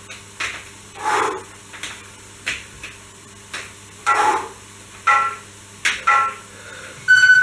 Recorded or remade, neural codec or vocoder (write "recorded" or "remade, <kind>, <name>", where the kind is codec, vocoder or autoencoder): recorded